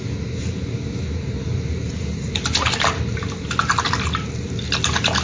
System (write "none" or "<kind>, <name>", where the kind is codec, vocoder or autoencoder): none